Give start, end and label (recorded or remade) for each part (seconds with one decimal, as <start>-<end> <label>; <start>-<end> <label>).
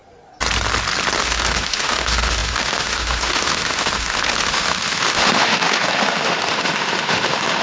0.0-1.2 recorded; 1.2-7.6 remade